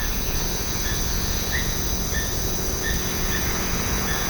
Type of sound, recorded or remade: remade